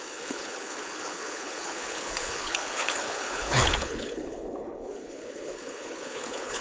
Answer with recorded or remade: remade